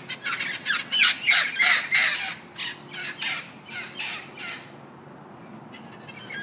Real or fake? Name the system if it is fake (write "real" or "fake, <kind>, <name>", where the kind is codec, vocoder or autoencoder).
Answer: real